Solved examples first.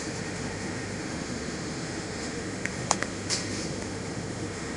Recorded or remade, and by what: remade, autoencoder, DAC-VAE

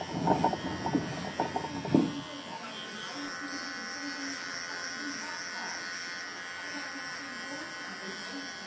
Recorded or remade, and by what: recorded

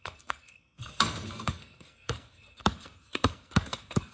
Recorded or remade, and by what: remade, codec, SNAC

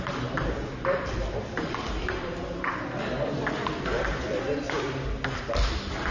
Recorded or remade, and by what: recorded